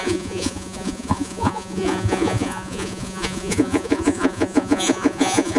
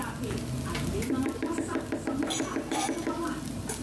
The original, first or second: second